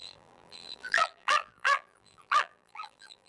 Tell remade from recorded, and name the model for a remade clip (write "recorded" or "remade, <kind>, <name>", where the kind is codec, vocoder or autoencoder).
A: remade, vocoder, BigVGAN v2